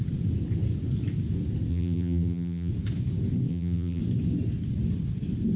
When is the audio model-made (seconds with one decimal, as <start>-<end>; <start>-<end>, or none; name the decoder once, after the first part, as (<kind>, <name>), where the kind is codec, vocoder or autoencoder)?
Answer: 1.7-2.7 (vocoder, BigVGAN v2); 3.5-4.0